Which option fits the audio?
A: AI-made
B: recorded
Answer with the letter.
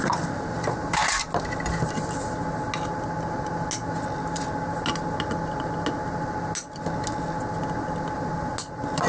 B